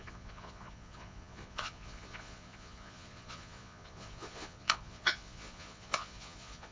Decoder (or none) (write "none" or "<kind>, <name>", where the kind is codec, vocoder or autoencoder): vocoder, Vocos